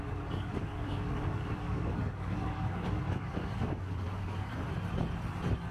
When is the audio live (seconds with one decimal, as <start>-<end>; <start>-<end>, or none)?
4.5-5.7